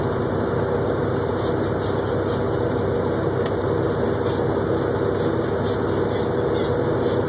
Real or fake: real